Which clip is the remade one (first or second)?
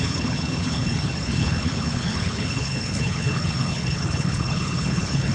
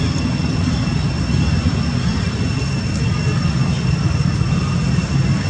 first